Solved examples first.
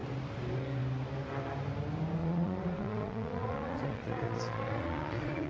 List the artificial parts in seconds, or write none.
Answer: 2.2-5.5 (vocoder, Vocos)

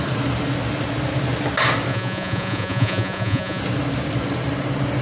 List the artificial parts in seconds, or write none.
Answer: 1.9-3.6 (vocoder, Vocos)